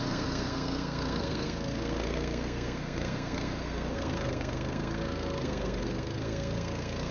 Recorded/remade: remade